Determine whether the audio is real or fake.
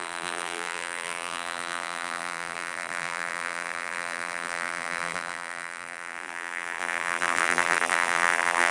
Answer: fake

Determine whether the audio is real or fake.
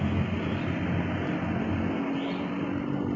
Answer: real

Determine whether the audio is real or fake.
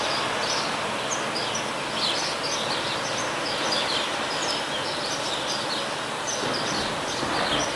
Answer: real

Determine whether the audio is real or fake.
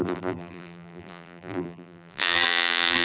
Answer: fake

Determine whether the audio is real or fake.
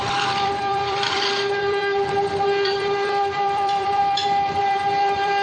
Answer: fake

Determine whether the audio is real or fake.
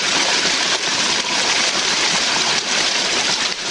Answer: fake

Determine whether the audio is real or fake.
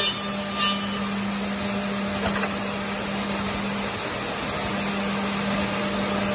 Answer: real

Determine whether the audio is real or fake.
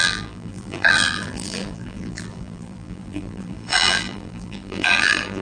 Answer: fake